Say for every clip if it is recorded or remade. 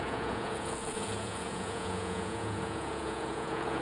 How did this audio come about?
remade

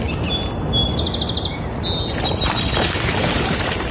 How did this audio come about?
recorded